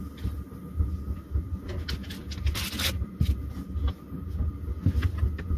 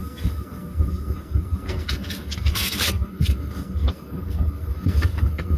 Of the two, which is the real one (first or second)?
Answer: first